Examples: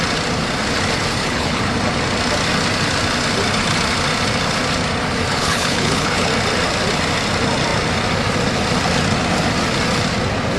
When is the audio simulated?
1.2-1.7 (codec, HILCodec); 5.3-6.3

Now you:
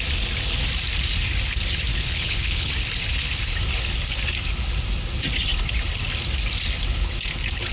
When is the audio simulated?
1.9-2.7 (codec, HILCodec)

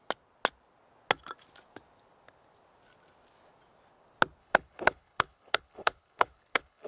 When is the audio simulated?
4.4-6.9 (codec, HILCodec)

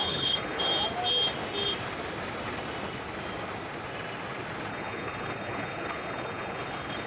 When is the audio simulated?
0.0-0.6 (codec, HILCodec); 4.7-7.1